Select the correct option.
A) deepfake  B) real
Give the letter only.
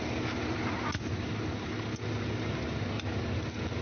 B